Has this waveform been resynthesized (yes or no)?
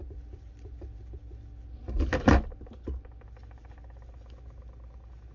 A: no